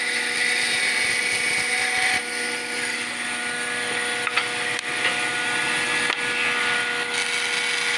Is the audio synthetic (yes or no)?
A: no